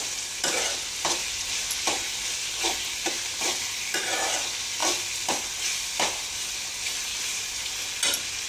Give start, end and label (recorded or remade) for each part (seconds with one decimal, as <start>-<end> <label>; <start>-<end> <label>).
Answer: 0.0-8.5 recorded